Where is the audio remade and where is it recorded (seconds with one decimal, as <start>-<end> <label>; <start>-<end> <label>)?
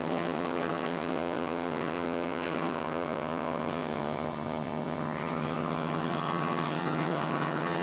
0.0-7.8 remade